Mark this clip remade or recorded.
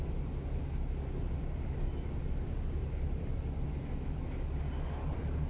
recorded